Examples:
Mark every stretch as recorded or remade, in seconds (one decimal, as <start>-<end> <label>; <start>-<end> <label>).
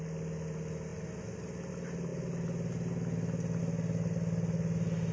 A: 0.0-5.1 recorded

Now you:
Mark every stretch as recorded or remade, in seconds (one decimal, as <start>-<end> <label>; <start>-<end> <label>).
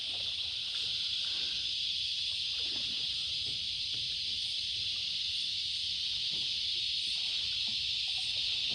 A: 0.0-5.0 remade; 5.0-5.5 recorded; 5.5-6.8 remade; 6.8-7.8 recorded; 7.8-8.7 remade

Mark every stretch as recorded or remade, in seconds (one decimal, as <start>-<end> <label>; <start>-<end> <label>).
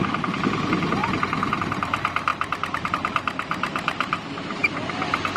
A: 0.0-1.0 remade; 1.0-1.6 recorded; 1.6-4.6 remade; 4.6-5.4 recorded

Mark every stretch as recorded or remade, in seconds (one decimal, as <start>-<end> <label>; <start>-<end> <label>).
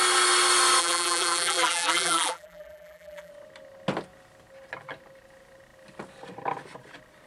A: 0.0-0.8 recorded; 0.8-3.3 remade; 3.3-7.3 recorded